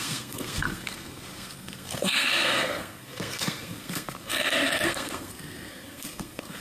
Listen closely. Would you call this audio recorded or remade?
remade